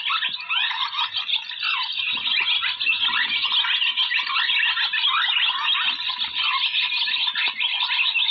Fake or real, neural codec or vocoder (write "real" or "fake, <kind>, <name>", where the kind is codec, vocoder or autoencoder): real